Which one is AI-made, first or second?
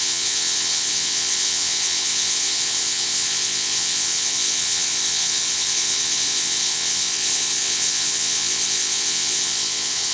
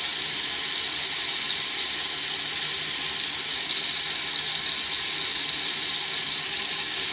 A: first